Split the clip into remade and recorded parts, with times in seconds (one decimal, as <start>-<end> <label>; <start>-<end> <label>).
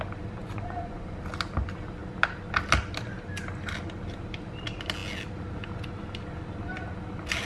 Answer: 0.0-0.4 recorded; 0.4-1.2 remade; 1.2-7.4 recorded